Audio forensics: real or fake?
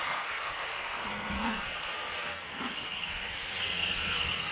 fake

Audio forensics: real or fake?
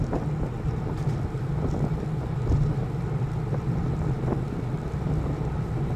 real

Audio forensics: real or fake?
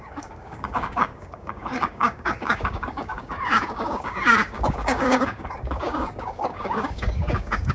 fake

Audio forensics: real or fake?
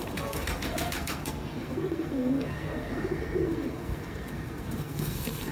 fake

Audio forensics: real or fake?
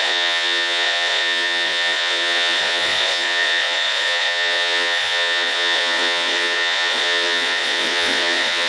fake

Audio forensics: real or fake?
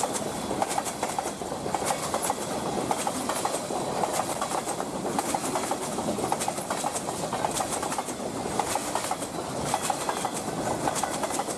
real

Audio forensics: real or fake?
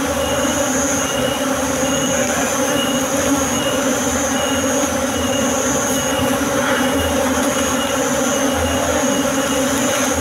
real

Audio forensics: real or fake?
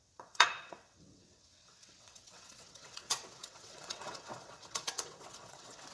fake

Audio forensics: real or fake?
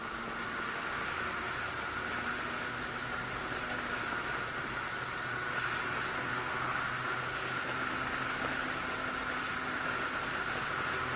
real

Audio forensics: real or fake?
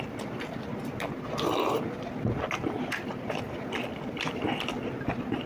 real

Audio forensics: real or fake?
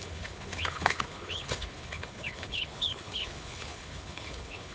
fake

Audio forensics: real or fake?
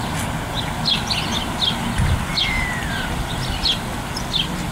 real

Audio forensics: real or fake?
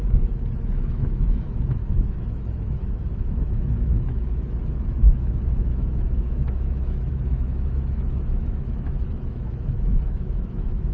fake